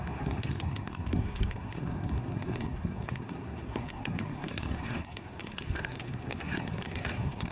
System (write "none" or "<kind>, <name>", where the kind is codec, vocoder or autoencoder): codec, SNAC